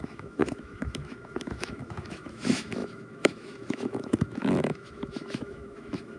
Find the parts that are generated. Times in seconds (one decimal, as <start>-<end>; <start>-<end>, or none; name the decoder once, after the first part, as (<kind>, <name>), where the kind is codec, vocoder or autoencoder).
0.0-6.2 (autoencoder, DAC-VAE)